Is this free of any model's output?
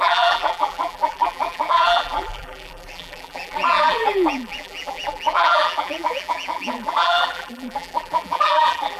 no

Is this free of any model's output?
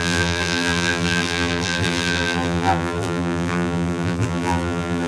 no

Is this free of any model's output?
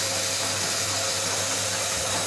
yes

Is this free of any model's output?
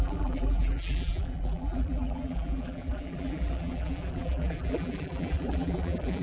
no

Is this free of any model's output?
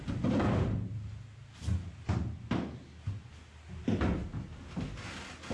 yes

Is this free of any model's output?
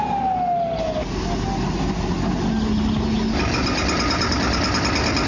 yes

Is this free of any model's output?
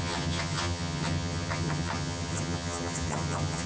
no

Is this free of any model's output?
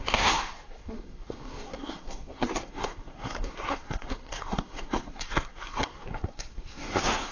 no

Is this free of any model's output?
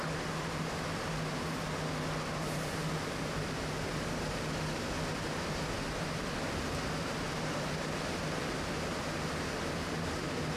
yes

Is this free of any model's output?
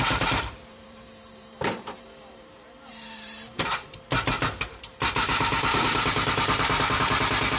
no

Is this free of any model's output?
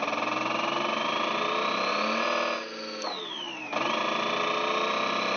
yes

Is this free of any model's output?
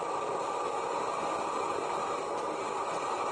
yes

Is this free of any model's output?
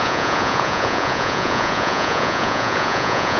no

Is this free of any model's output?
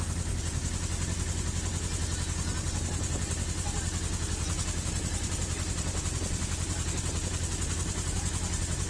yes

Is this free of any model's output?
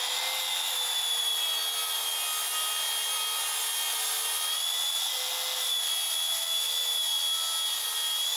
yes